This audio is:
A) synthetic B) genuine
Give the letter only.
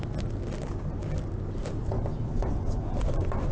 B